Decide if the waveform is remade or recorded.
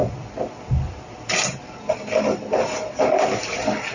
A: remade